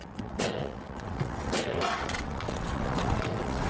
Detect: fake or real fake